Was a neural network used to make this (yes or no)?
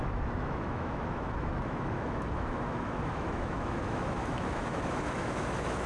yes